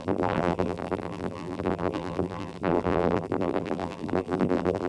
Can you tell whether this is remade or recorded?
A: remade